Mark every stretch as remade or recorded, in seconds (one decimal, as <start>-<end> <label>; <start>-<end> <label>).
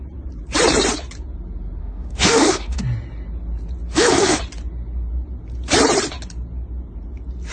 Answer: 0.0-1.8 recorded; 1.8-2.8 remade; 2.8-3.9 recorded; 3.9-4.4 remade; 4.4-7.5 recorded